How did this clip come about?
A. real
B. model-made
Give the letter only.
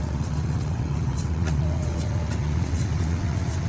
B